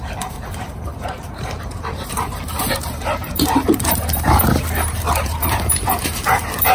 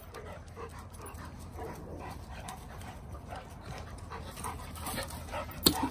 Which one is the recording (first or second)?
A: second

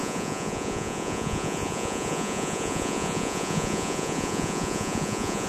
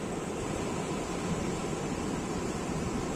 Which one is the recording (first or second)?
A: second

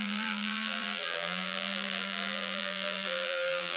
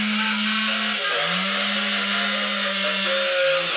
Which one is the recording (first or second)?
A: second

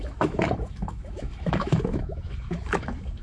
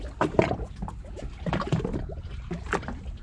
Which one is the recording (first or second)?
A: second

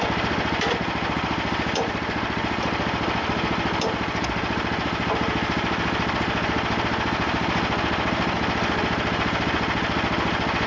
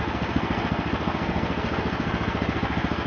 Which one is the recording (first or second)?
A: first